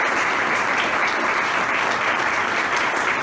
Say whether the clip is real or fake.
real